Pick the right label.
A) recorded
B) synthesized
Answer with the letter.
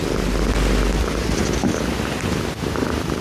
A